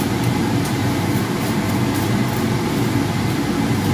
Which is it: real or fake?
real